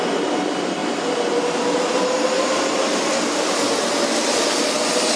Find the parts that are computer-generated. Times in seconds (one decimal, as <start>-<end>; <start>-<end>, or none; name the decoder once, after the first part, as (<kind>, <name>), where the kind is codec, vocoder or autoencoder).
none